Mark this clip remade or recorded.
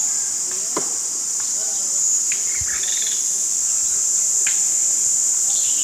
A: recorded